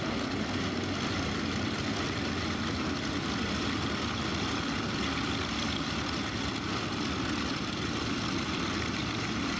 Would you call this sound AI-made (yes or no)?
no